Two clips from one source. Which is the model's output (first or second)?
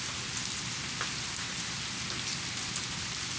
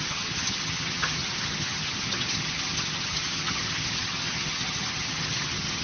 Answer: second